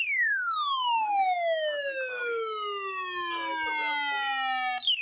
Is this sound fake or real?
real